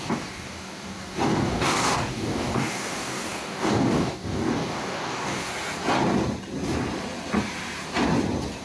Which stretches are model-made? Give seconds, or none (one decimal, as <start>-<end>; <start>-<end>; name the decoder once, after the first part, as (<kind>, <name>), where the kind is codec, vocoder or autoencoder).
0.0-5.5 (codec, DAC)